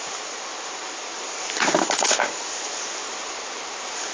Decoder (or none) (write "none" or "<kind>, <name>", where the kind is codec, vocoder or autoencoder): vocoder, BigVGAN v2